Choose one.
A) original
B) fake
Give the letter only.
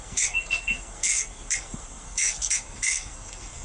B